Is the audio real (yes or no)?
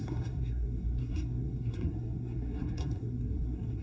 no